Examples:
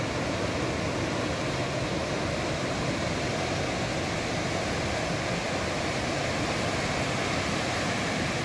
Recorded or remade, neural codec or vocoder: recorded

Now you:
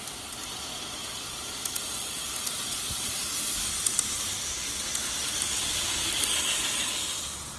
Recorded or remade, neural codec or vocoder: recorded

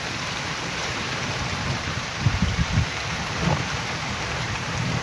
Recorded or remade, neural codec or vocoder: remade, vocoder, BigVGAN v2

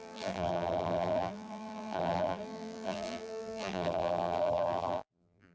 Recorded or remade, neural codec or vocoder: remade, vocoder, BigVGAN v2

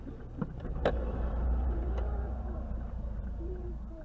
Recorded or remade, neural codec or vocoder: remade, vocoder, BigVGAN v2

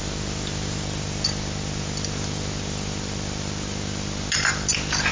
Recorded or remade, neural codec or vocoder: recorded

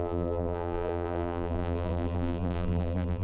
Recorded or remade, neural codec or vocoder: remade, vocoder, BigVGAN v2